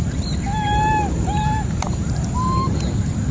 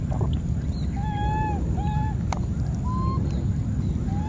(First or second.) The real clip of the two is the second